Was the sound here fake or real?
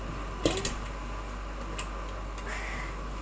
real